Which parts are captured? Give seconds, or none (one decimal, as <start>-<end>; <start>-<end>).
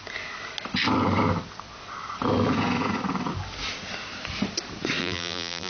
0.0-5.0